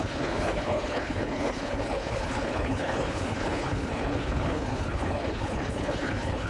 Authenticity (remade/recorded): remade